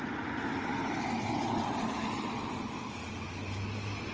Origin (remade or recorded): recorded